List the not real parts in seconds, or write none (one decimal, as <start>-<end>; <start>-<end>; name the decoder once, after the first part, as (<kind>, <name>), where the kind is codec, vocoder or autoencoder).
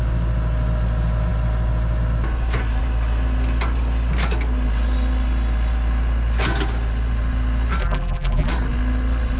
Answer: 7.8-8.5 (vocoder, BigVGAN v2)